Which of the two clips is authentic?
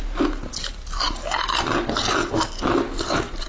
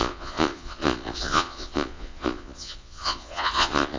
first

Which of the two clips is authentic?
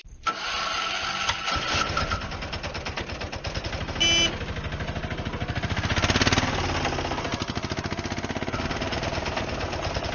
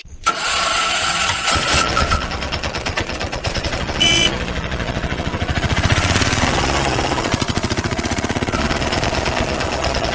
first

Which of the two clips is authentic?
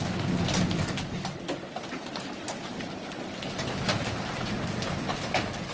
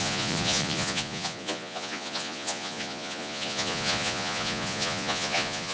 first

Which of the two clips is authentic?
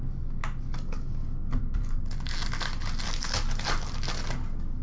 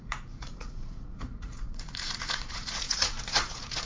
first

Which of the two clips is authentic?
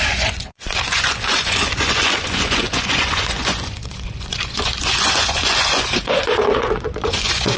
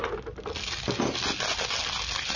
second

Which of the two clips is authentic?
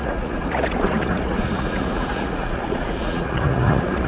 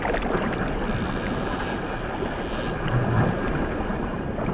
second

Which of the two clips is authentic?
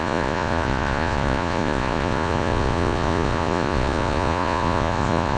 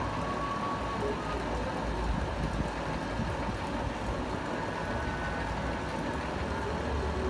second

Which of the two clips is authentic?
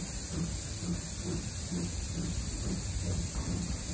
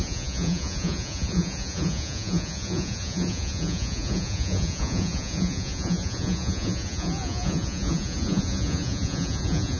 first